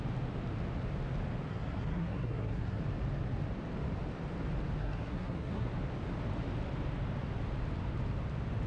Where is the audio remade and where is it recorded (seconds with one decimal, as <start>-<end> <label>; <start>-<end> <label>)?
0.0-1.5 recorded; 1.5-2.8 remade; 2.8-4.8 recorded; 4.8-5.7 remade; 5.7-8.7 recorded